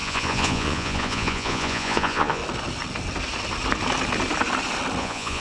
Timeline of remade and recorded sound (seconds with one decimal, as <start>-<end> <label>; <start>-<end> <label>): 0.0-2.4 remade; 2.4-5.0 recorded; 5.0-5.4 remade